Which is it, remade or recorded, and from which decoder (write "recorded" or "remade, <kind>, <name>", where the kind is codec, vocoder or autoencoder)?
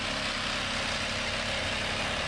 recorded